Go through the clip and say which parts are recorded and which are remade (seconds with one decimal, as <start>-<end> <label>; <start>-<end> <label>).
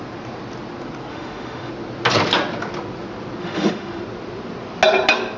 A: 0.0-1.1 recorded; 1.1-1.7 remade; 1.7-3.4 recorded; 3.4-4.0 remade; 4.0-5.4 recorded